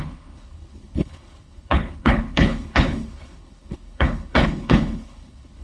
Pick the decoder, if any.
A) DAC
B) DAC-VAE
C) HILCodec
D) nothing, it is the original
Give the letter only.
C